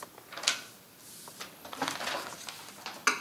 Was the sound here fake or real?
real